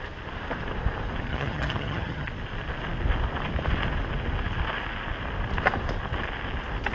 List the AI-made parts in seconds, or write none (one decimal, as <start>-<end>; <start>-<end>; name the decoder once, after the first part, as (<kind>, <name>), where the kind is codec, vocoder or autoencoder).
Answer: 1.3-2.3 (vocoder, HiFi-GAN)